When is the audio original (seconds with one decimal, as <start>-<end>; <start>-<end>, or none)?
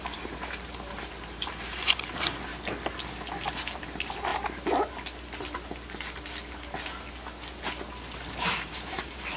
2.5-3.8; 4.3-8.3